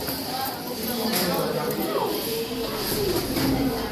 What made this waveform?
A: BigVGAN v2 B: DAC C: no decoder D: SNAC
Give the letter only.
C